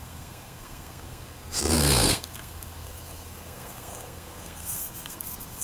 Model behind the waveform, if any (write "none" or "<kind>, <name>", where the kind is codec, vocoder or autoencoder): codec, SNAC